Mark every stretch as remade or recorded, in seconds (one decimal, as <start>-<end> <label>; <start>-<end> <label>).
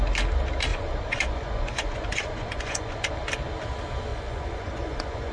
0.0-0.7 recorded; 0.7-3.1 remade; 3.1-4.1 recorded; 4.1-5.3 remade